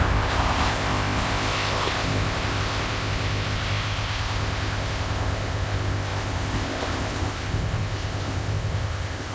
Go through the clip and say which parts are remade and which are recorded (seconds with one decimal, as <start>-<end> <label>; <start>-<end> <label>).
0.0-9.3 remade